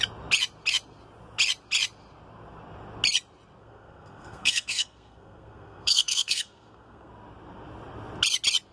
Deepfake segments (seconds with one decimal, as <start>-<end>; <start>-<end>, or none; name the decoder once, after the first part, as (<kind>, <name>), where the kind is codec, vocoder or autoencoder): 3.6-7.1 (codec, SNAC)